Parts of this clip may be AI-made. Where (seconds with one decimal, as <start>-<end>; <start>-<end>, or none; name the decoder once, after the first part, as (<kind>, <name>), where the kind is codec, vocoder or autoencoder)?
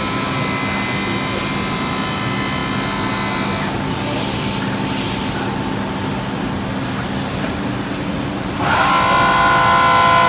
none